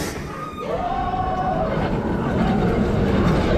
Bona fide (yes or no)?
yes